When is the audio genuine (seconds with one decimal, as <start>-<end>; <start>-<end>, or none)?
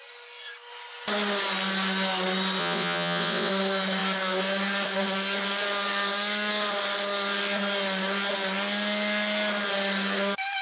0.0-2.6; 3.5-10.6